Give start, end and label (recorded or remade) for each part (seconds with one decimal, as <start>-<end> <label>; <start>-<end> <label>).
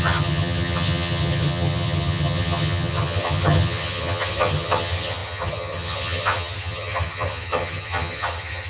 0.0-8.7 remade